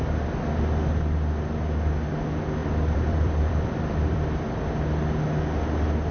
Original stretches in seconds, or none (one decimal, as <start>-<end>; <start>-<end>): 0.0-2.6; 4.5-6.1